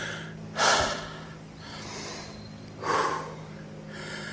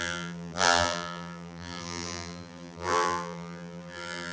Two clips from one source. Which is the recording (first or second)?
first